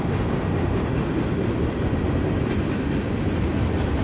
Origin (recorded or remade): recorded